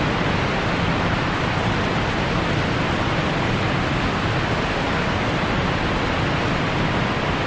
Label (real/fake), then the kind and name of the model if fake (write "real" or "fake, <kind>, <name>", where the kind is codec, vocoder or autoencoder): real